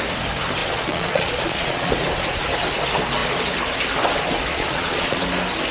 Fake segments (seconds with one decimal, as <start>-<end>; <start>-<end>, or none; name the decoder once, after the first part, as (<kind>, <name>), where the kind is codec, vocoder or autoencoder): 0.6-1.9 (vocoder, Vocos); 4.5-5.2